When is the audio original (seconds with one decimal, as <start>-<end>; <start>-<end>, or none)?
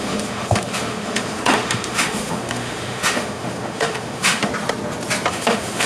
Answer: 4.5-5.3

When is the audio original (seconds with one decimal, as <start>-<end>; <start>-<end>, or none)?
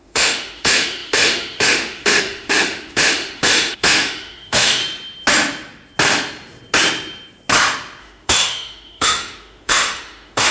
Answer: 4.8-8.0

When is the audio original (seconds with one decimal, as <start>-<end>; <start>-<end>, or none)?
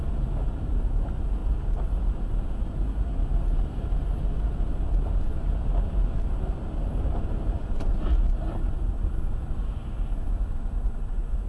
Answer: 0.0-11.5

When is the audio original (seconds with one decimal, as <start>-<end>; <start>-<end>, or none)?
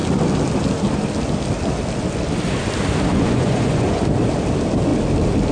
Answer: 0.0-3.1; 4.0-5.5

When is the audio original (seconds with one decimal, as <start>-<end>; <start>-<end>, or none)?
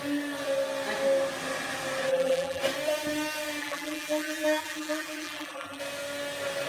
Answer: 0.0-2.1; 2.6-3.6; 5.8-6.7